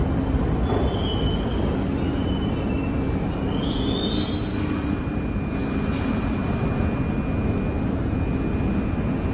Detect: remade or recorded recorded